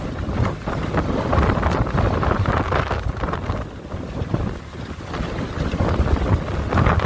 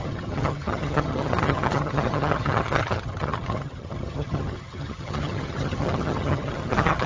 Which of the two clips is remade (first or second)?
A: second